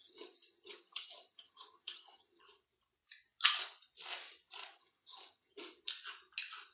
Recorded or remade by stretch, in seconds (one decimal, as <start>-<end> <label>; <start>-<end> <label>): 0.0-2.4 remade; 2.4-4.6 recorded; 4.6-5.5 remade; 5.5-6.7 recorded